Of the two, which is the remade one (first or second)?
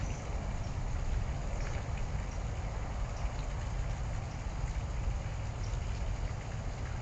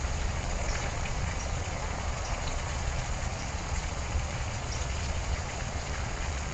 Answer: second